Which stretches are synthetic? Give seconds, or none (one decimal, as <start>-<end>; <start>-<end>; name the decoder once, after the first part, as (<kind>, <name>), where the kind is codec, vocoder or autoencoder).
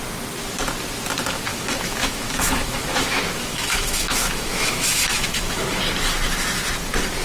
1.5-5.8 (autoencoder, DAC-VAE)